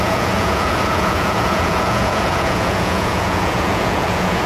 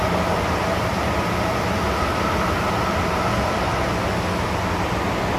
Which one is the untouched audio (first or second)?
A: second